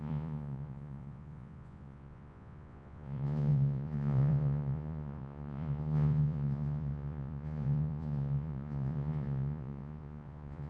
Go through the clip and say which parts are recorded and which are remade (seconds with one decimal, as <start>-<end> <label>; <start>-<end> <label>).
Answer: 0.0-10.7 remade